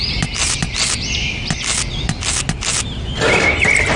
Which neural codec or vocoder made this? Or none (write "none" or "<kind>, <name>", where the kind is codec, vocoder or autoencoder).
none